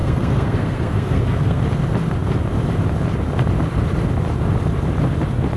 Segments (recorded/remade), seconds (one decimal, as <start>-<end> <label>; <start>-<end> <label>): 0.0-1.6 remade; 1.6-5.6 recorded

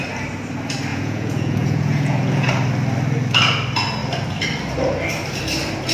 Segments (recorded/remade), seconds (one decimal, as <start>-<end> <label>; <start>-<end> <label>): 0.0-0.9 recorded; 0.9-2.5 remade; 2.5-5.9 recorded

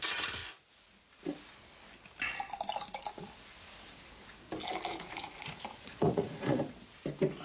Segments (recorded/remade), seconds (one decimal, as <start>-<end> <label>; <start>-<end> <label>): 0.0-4.9 recorded; 4.9-6.6 remade; 6.6-7.4 recorded